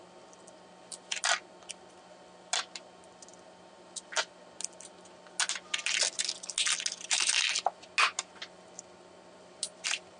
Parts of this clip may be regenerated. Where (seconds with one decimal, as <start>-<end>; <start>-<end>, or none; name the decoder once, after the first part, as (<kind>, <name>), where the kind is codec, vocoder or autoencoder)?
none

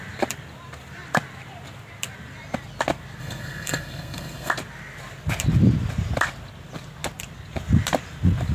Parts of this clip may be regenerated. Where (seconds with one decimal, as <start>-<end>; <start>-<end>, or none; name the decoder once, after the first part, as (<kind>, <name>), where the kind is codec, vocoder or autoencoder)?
3.2-4.5 (codec, SNAC)

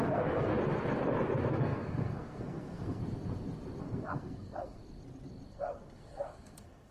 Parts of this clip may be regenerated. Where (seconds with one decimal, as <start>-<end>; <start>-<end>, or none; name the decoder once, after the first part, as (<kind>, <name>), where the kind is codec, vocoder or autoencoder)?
0.0-0.5 (codec, SNAC); 1.5-3.0; 3.8-4.8; 5.5-6.9

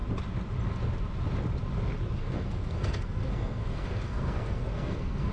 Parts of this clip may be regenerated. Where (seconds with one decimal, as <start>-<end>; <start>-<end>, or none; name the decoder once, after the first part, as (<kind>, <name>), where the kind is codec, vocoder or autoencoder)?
2.2-5.3 (codec, SNAC)